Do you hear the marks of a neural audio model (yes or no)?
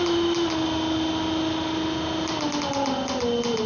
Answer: no